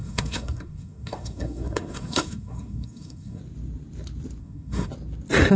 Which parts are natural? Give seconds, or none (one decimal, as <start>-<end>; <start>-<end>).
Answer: 3.4-4.4; 4.9-5.6